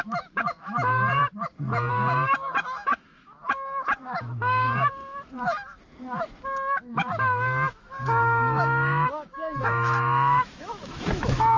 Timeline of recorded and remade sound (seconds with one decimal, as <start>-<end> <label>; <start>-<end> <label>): 0.0-1.2 remade; 1.2-1.9 recorded; 1.9-11.6 remade